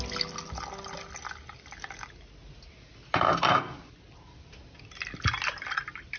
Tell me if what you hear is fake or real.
real